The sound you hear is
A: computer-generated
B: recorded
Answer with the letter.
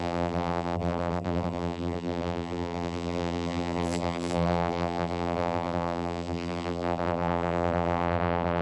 A